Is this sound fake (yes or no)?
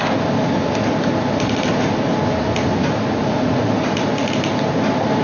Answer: no